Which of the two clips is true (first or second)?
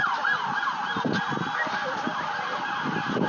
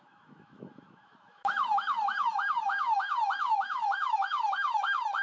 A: first